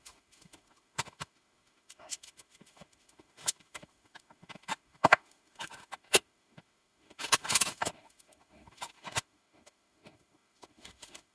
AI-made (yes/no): yes